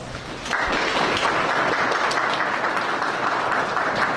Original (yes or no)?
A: yes